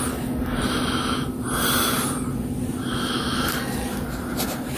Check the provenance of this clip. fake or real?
real